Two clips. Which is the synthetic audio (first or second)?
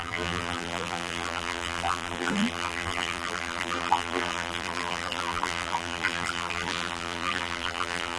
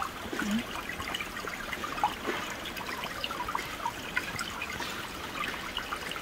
first